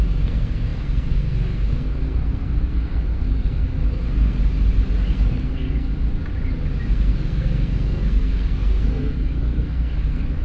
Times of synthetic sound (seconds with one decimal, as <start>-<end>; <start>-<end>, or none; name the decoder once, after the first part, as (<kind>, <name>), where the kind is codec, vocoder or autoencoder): 0.0-4.4 (codec, SNAC); 5.1-5.9; 6.9-10.4